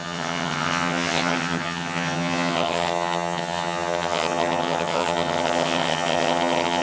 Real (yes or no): no